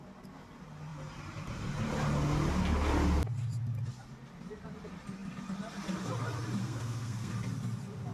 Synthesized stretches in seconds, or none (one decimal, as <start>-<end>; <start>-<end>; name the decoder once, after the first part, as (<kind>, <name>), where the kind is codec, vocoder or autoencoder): 6.6-7.3 (codec, SNAC)